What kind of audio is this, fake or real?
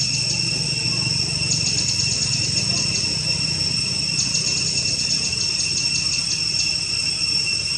real